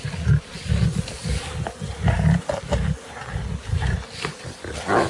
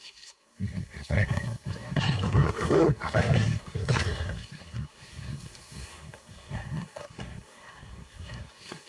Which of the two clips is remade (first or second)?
second